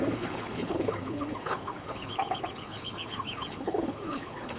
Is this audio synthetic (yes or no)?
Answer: yes